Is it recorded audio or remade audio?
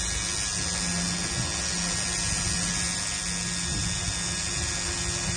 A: recorded